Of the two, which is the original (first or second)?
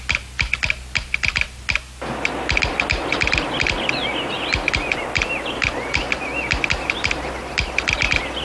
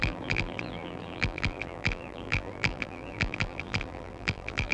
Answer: first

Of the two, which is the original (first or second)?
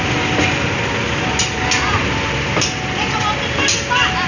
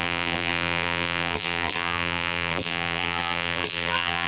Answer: first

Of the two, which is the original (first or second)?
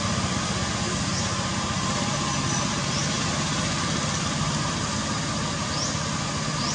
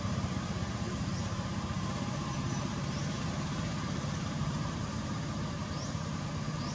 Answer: first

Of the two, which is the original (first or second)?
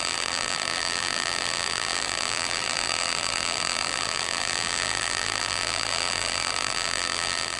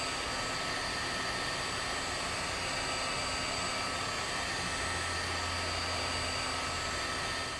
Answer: second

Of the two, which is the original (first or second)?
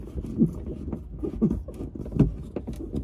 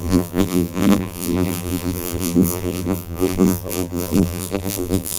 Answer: first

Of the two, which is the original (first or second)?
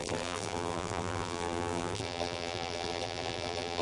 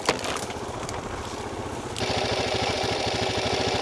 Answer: second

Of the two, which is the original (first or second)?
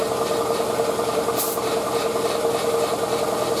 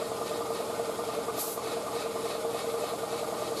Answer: first